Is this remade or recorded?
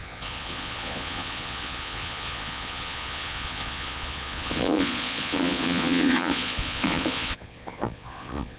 remade